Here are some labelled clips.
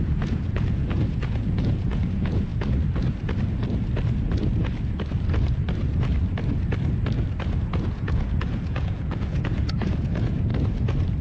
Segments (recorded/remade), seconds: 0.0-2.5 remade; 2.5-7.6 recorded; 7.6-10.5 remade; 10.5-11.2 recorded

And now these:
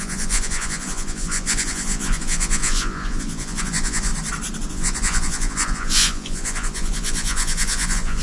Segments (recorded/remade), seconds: 0.0-4.1 remade; 4.1-4.7 recorded; 4.7-8.2 remade

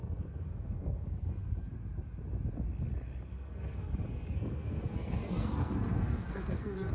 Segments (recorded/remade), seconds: 0.0-1.7 remade; 1.7-3.3 recorded; 3.3-6.9 remade

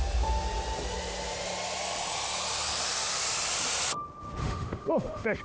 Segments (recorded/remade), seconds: 0.0-4.4 recorded; 4.4-5.4 remade

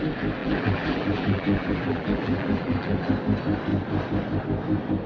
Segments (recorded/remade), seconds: 0.0-0.4 recorded; 0.4-3.1 remade; 3.1-5.1 recorded